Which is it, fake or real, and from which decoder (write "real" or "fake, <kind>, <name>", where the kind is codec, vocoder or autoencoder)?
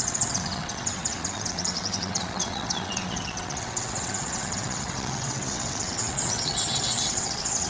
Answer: fake, vocoder, WaveNeXt